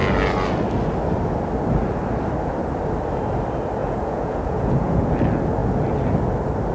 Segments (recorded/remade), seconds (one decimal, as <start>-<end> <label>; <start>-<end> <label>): 0.0-3.8 recorded; 3.8-5.1 remade; 5.1-6.7 recorded